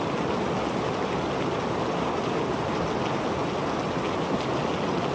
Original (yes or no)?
yes